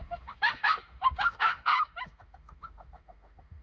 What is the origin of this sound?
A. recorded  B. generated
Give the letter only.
B